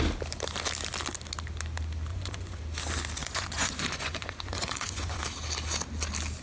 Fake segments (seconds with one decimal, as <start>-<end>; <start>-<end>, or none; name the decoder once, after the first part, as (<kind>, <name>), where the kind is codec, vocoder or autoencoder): 2.1-2.6 (vocoder, Vocos); 3.2-5.2